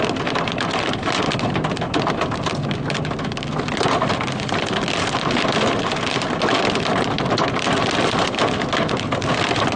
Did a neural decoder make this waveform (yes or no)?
no